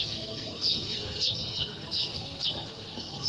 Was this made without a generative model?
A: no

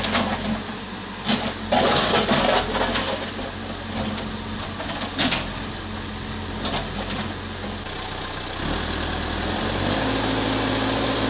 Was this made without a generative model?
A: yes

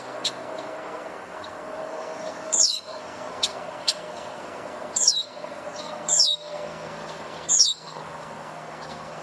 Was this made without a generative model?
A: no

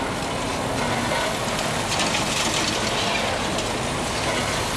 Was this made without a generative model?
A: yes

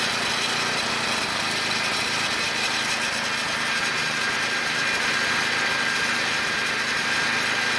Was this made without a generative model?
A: yes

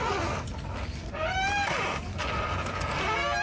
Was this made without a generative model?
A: yes